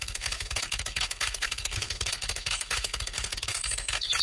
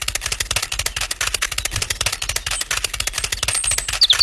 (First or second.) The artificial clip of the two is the first